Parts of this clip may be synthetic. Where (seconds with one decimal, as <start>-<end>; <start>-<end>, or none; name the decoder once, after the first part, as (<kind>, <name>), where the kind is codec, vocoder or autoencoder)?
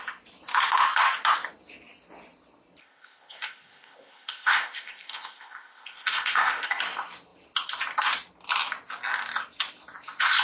2.8-6.8 (codec, ZipCodec)